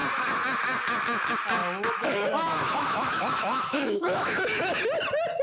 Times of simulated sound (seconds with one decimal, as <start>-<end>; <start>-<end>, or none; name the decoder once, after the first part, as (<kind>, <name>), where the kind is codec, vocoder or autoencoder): 1.6-4.8 (autoencoder, DAC-VAE)